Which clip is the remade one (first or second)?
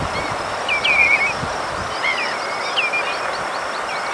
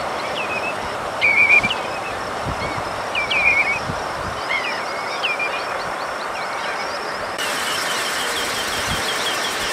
second